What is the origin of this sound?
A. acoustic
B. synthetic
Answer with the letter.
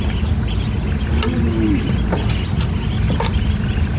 A